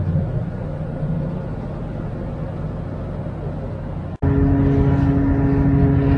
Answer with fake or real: real